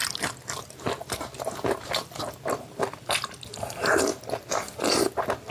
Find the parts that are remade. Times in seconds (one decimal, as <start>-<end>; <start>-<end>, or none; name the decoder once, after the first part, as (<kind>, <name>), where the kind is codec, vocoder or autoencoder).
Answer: none